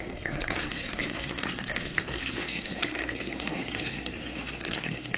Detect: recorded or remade remade